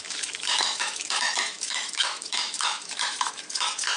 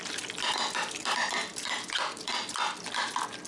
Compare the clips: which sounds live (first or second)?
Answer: second